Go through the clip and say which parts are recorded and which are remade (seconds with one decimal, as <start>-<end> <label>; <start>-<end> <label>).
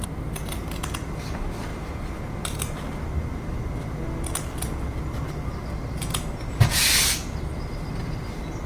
0.0-8.7 recorded